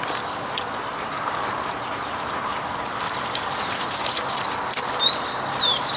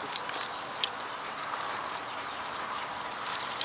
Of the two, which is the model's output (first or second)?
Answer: first